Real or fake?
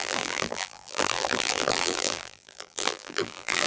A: fake